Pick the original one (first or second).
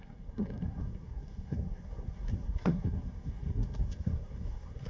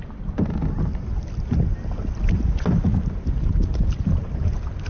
second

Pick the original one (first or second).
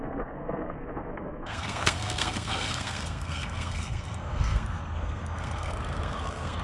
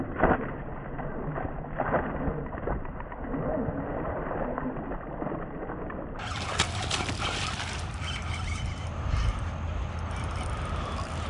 second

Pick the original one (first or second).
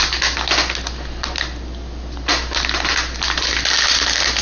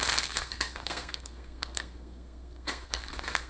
first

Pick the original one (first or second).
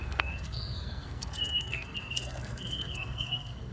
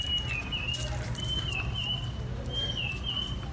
second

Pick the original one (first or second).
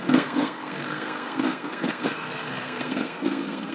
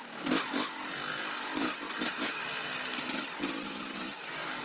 second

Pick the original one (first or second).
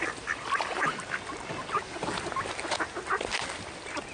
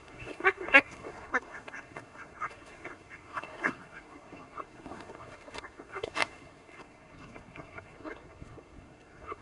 first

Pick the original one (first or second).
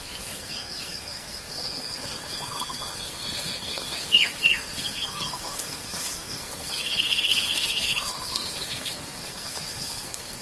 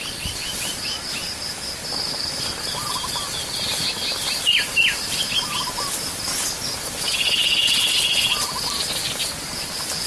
second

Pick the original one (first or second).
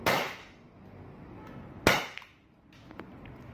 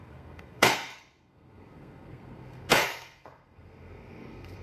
first